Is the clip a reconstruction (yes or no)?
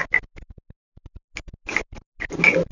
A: no